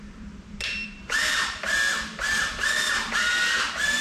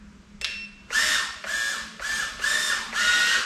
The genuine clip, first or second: second